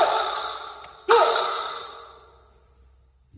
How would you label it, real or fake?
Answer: real